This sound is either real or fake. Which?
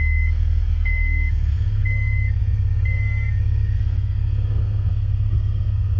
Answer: fake